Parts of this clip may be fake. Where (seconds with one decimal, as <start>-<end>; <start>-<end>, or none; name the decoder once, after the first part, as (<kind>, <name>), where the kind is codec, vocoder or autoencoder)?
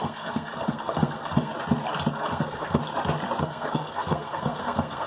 0.0-1.5 (codec, SNAC); 2.1-2.8; 3.4-5.1